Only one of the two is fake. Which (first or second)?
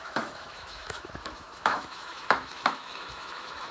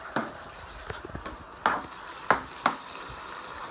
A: first